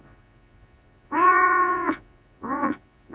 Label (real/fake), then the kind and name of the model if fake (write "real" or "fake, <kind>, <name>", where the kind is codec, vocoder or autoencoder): fake, vocoder, Vocos